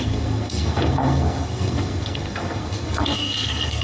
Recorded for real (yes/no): no